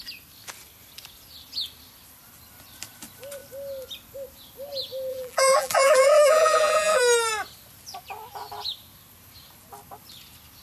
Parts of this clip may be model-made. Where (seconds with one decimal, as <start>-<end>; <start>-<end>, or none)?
5.1-7.0